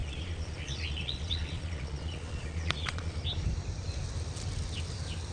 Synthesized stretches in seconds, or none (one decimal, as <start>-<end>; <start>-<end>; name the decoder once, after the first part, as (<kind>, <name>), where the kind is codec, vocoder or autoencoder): 0.0-3.2 (vocoder, Vocos)